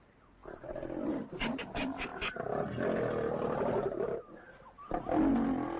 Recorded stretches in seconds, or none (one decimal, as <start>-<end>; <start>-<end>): 0.0-5.8

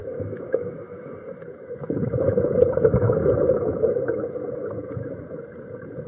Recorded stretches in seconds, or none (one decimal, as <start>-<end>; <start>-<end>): 1.1-1.5; 5.2-6.1